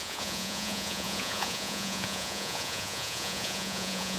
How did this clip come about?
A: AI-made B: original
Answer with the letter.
A